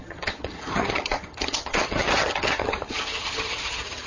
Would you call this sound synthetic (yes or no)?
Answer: yes